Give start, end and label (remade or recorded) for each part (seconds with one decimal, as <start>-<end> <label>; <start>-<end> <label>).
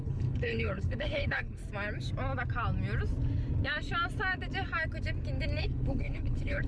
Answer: 0.0-1.6 remade; 1.6-5.6 recorded; 5.6-6.7 remade